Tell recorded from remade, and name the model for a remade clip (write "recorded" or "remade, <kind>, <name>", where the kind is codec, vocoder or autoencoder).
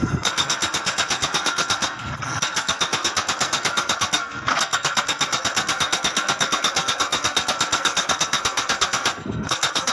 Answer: remade, codec, SNAC